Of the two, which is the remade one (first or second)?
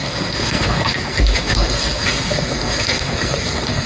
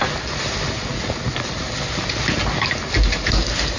first